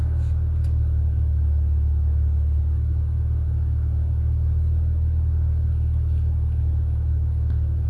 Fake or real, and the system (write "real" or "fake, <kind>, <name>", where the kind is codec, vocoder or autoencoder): real